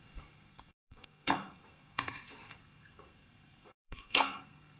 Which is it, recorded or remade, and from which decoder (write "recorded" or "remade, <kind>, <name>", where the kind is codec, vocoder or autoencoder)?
remade, codec, SNAC